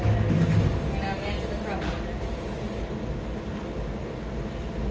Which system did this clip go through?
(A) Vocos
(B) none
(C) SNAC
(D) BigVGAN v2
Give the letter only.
B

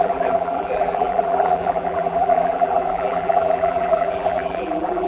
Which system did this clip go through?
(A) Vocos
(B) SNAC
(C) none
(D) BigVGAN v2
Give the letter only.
D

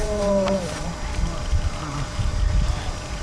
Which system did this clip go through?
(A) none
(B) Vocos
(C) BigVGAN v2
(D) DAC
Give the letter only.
C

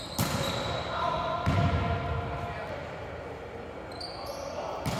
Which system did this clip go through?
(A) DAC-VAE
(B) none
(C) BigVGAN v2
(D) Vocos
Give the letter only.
B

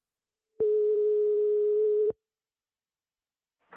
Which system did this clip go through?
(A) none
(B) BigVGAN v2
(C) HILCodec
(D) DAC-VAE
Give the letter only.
B